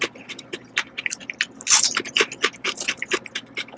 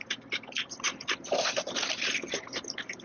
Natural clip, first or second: first